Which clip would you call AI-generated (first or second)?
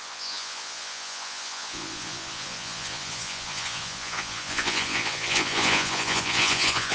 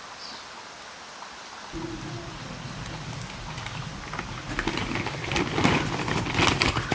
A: first